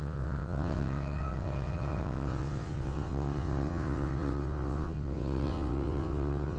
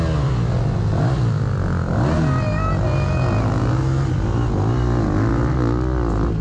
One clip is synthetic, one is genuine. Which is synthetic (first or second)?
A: first